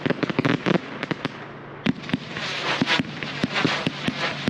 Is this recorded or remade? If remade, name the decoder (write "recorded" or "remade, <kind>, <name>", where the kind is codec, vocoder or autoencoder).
recorded